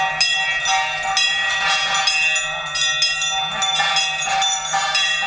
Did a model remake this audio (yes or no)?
no